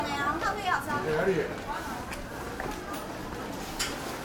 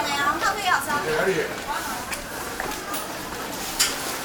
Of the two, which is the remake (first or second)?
second